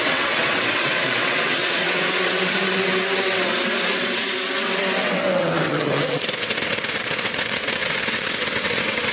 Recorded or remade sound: remade